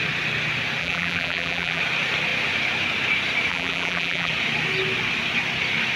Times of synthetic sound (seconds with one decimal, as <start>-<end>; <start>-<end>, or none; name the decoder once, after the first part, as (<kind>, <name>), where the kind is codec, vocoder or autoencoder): 0.8-1.8 (vocoder, BigVGAN v2); 3.5-4.3